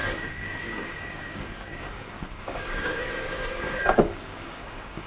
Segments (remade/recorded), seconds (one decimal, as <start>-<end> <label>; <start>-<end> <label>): 0.0-5.1 remade